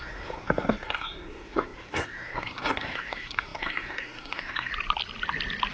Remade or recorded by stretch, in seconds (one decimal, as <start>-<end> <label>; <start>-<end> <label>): 0.0-4.7 remade; 4.7-5.7 recorded